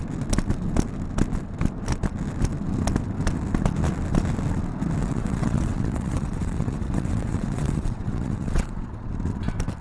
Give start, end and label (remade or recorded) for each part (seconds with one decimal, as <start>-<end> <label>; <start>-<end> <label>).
0.0-5.0 recorded; 5.0-9.1 remade; 9.1-9.8 recorded

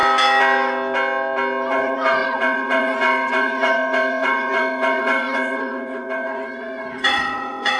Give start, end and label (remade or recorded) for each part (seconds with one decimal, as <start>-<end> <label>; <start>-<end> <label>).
0.0-1.7 recorded; 1.7-7.8 remade